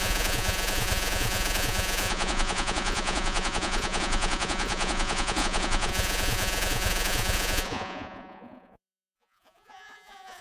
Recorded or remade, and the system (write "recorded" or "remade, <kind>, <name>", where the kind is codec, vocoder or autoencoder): remade, vocoder, Vocos